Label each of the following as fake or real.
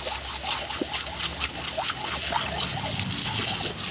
real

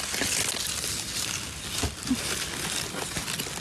real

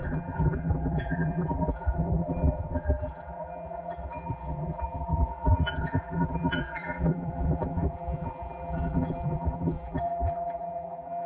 fake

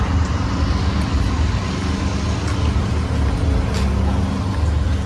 real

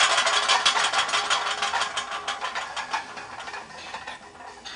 real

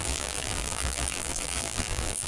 fake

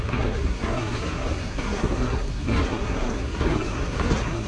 fake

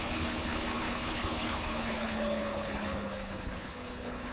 fake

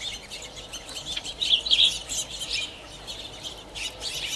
real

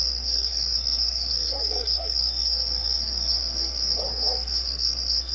fake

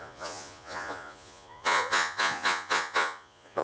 fake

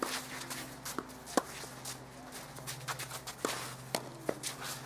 real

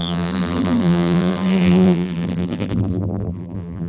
fake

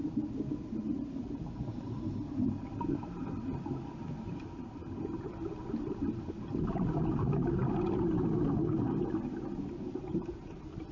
real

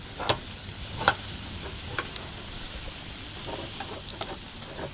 real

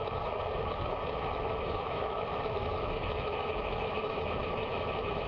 fake